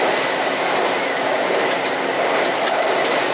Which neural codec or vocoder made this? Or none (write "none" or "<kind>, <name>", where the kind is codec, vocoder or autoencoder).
none